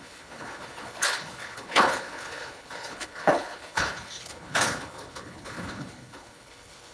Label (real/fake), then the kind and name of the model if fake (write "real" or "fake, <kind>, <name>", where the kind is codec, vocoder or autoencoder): fake, codec, HILCodec